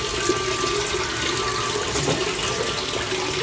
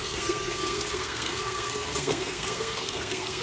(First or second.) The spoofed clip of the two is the second